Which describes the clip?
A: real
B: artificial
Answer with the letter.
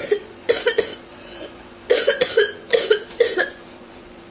B